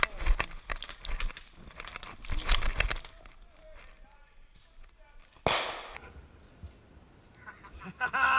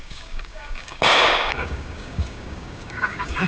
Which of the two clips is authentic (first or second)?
first